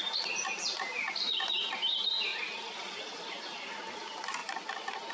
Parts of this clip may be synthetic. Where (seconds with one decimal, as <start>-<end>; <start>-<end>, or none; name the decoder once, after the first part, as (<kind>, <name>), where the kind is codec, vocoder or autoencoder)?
none